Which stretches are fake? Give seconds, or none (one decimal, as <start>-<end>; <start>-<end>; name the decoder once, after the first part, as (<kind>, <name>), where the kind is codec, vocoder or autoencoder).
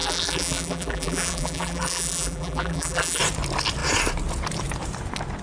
0.0-3.2 (vocoder, BigVGAN v2)